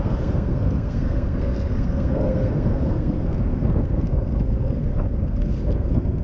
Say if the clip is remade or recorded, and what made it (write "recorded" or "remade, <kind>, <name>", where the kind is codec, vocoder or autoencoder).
remade, codec, SNAC